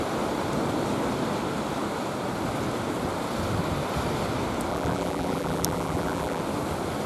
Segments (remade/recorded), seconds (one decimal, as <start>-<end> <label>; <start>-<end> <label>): 0.0-4.7 recorded; 4.7-6.4 remade; 6.4-7.1 recorded